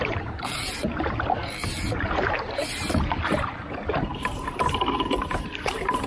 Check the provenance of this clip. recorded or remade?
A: remade